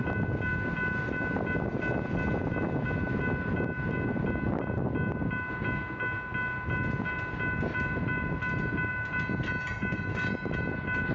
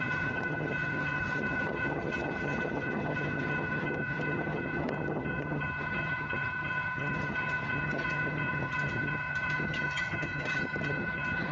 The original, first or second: first